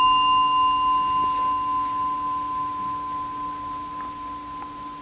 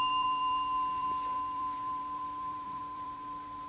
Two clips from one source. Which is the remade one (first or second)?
second